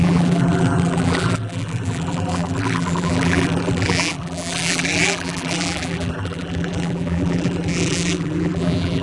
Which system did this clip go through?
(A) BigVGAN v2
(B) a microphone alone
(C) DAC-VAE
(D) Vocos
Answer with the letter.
A